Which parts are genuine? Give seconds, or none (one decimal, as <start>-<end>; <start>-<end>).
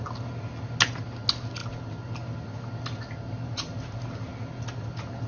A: 0.0-5.3